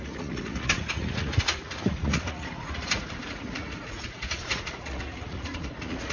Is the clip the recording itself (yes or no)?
no